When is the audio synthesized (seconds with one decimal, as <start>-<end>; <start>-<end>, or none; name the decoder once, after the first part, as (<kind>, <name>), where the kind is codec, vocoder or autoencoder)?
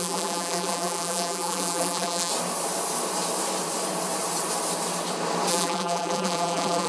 0.0-2.3 (vocoder, BigVGAN v2); 5.5-6.9